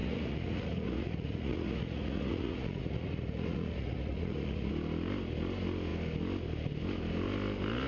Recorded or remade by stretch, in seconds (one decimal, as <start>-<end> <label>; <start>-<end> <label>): 0.0-4.7 remade; 4.7-7.9 recorded